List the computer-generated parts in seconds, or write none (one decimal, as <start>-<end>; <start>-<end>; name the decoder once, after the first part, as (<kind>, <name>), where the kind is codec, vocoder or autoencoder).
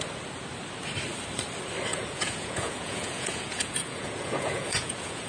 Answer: 1.9-5.3 (vocoder, Vocos)